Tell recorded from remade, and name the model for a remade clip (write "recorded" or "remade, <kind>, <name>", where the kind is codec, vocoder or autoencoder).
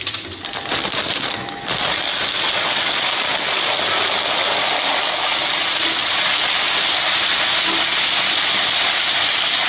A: recorded